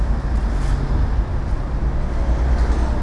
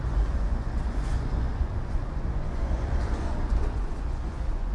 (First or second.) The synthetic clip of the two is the second